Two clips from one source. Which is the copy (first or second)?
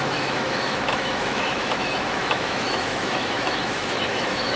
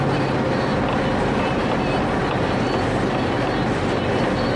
first